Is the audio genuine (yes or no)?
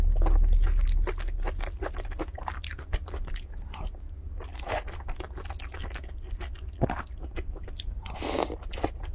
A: yes